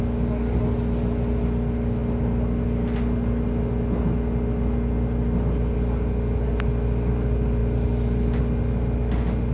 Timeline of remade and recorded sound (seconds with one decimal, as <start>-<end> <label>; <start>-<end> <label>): 0.0-9.5 recorded